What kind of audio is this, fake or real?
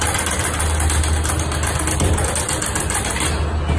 real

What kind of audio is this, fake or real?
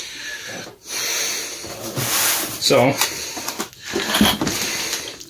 real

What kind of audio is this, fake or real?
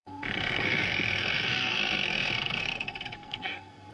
fake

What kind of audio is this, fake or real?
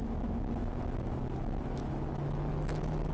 fake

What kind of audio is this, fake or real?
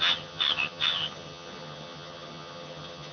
fake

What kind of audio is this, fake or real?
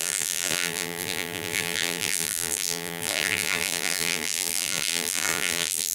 fake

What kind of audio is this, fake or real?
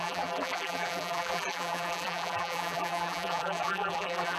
fake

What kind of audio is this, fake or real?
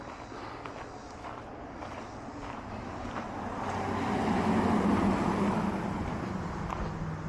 real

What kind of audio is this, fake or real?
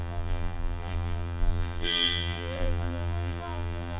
fake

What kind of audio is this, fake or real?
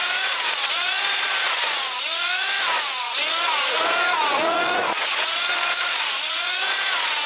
fake